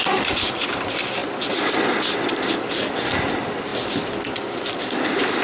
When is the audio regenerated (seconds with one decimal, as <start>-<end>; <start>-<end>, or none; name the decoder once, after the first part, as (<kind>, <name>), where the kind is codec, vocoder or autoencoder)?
none